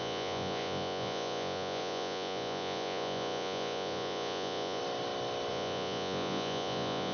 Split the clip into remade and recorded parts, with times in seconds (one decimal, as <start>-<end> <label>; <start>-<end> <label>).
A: 0.0-4.8 remade; 4.8-5.5 recorded; 5.5-7.1 remade